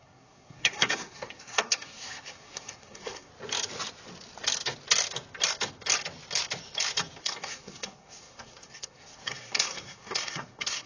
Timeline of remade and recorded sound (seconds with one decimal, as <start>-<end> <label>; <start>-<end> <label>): 0.0-3.3 remade; 3.3-7.2 recorded; 7.2-10.9 remade